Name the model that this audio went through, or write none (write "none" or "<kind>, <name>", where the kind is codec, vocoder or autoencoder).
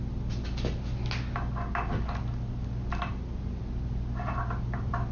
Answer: none